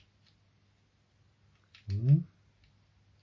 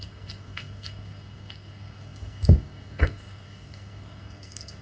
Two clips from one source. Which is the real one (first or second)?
first